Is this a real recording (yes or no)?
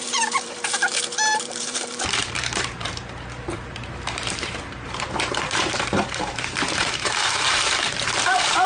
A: no